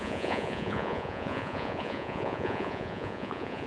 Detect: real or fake fake